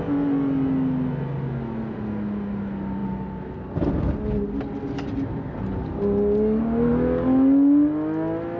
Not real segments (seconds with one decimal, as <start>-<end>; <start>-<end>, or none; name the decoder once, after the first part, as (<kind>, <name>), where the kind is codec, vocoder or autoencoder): none

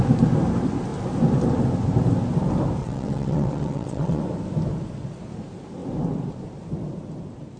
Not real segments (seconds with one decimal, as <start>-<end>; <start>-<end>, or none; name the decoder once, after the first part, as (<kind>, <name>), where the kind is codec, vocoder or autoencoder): 2.8-4.2 (vocoder, WaveNeXt)

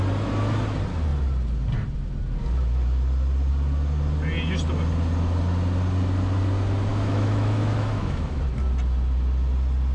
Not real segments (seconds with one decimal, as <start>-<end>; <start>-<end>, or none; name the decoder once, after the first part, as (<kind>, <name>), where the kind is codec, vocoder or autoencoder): 6.9-8.4 (autoencoder, DAC-VAE)

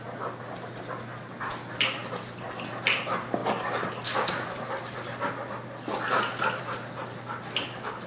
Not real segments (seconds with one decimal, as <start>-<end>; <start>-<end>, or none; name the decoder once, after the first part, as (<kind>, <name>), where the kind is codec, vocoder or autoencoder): 7.6-8.1 (codec, HILCodec)

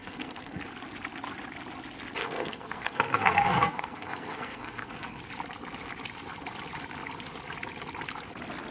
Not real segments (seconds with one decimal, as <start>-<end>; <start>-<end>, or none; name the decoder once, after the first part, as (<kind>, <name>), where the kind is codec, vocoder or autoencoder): 0.0-0.6 (codec, SNAC); 2.2-5.2

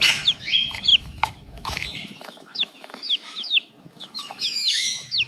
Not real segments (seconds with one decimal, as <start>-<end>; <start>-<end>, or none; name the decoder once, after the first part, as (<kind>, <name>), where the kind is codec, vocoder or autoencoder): 0.0-5.3 (autoencoder, DAC-VAE)

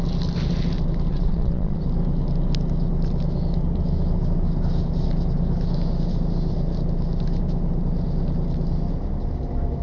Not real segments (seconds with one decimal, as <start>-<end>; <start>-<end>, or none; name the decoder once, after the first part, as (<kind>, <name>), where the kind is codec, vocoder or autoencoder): 1.1-1.8 (vocoder, Vocos)

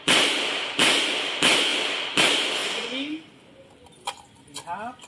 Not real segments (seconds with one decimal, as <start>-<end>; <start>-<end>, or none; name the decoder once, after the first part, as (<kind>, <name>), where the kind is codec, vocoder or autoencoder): none